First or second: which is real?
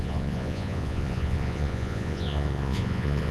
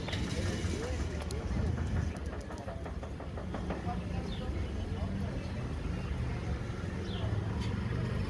second